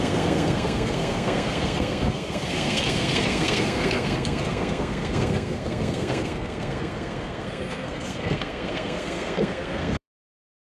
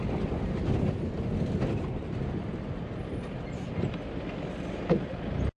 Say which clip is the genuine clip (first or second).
second